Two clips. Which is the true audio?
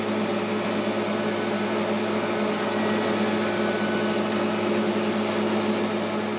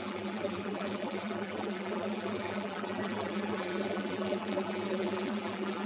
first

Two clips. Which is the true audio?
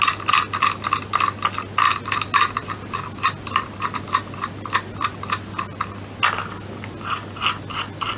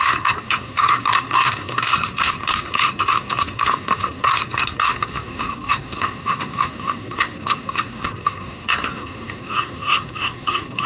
first